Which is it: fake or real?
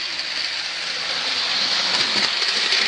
fake